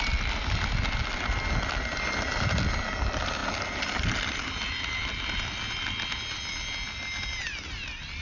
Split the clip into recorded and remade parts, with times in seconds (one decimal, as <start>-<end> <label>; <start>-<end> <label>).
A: 0.0-8.2 recorded